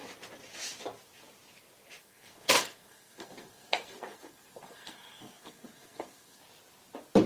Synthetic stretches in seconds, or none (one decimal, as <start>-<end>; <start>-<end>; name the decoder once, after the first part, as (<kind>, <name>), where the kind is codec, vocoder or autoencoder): 2.0-6.4 (codec, SNAC)